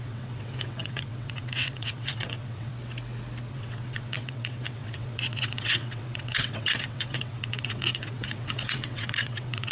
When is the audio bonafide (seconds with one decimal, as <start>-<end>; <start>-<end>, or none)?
2.7-3.5